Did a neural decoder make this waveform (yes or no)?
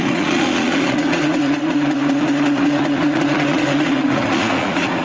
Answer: yes